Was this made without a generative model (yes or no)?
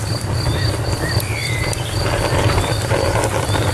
yes